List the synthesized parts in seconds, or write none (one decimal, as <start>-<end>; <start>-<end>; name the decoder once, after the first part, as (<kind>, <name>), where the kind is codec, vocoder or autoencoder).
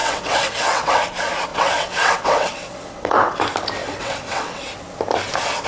0.0-0.9 (vocoder, WaveNeXt); 1.5-3.4; 3.8-4.7